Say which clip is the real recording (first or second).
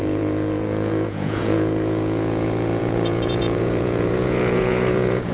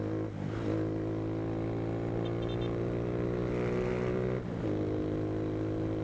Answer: second